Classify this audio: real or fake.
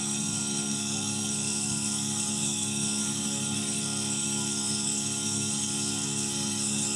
fake